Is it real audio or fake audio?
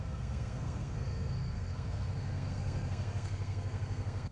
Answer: fake